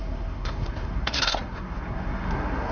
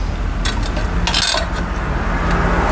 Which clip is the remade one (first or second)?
first